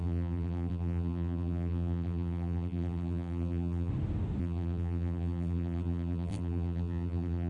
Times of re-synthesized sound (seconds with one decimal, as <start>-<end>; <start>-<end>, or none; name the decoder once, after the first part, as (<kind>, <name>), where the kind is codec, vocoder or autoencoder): 0.0-3.9 (vocoder, BigVGAN v2); 4.4-7.5